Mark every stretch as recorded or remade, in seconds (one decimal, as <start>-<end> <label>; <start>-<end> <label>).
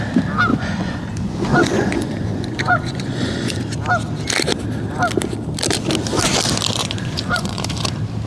0.0-0.5 recorded; 0.5-3.6 remade; 3.6-6.8 recorded; 6.8-7.6 remade; 7.6-8.3 recorded